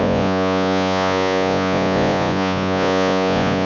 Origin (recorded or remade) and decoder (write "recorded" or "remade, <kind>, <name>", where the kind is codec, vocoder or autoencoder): remade, vocoder, Vocos